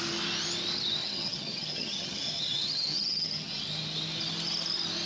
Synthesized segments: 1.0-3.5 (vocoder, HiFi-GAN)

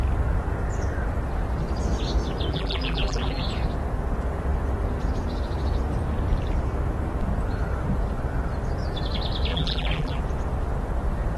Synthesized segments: 2.5-3.4 (vocoder, BigVGAN v2); 9.5-10.2